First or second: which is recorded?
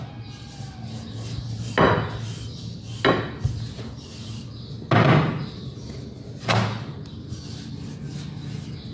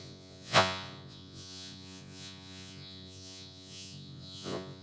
first